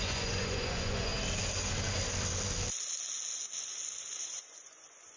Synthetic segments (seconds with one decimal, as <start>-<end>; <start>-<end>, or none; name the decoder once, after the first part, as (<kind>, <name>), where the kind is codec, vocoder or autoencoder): 0.0-1.1 (vocoder, Vocos); 4.2-5.2